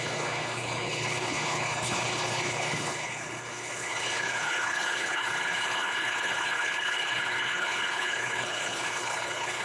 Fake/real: fake